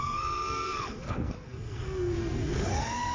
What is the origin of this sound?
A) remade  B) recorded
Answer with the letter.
A